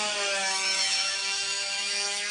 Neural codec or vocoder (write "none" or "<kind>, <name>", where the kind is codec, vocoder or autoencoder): autoencoder, DAC-VAE